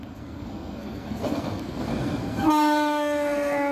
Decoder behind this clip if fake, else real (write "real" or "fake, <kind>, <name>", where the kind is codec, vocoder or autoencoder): fake, codec, SNAC